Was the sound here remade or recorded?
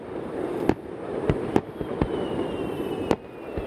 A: recorded